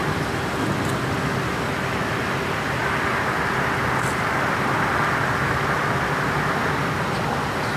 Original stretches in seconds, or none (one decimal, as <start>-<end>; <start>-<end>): 0.0-7.8